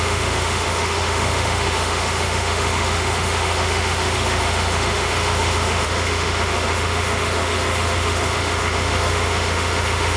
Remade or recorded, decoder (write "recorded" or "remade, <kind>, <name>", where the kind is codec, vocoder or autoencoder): remade, autoencoder, DAC-VAE